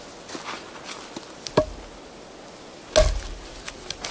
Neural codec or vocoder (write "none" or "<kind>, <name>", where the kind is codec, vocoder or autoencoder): none